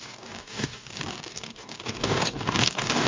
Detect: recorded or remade remade